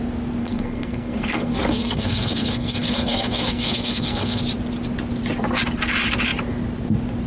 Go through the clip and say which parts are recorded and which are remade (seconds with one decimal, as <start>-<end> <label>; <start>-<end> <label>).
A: 0.0-0.4 recorded; 0.4-4.4 remade; 4.4-7.3 recorded